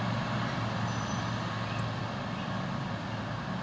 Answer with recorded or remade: recorded